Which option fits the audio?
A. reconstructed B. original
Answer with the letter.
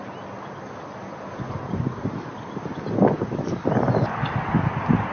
B